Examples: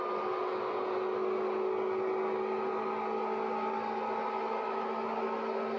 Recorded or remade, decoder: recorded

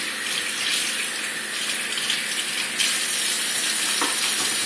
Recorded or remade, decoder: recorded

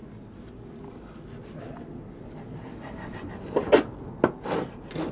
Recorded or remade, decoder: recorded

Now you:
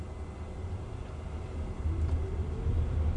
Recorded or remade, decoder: recorded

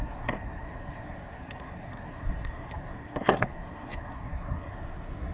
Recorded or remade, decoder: remade, codec, SNAC